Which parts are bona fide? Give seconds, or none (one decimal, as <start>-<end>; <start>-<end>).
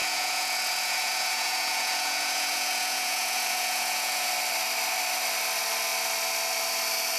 4.3-7.2